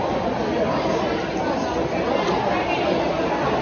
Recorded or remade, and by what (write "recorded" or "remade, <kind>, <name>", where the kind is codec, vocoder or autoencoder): recorded